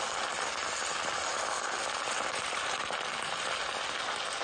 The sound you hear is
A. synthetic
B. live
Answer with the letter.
B